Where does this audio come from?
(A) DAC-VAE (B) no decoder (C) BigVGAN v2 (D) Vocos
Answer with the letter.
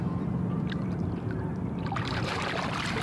C